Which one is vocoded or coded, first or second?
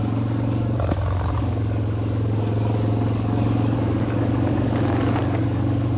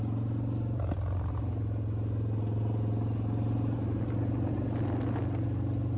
first